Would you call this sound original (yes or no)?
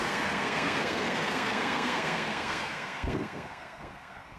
no